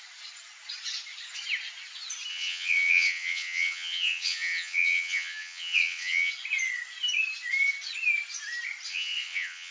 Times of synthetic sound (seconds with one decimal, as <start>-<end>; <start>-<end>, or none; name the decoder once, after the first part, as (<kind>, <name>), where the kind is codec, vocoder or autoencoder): 2.3-6.3 (vocoder, WaveNeXt); 8.9-9.7